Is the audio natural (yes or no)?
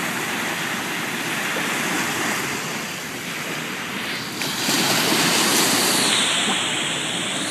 yes